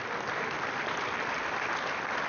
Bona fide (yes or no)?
yes